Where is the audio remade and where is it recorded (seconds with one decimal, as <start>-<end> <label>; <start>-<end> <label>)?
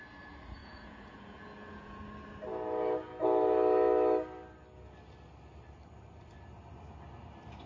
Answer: 0.0-0.6 recorded; 0.6-2.0 remade; 2.0-7.7 recorded